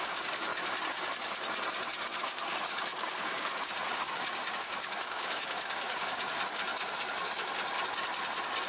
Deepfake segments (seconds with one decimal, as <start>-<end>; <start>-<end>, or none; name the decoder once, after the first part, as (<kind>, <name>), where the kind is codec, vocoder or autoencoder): 0.0-0.5 (codec, DAC); 2.2-6.7